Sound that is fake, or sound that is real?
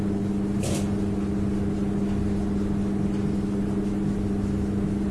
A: real